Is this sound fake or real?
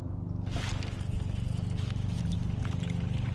real